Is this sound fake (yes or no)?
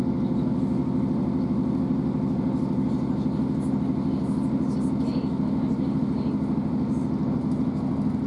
no